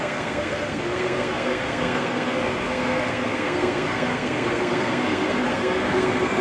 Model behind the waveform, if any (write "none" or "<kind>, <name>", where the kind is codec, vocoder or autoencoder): codec, SNAC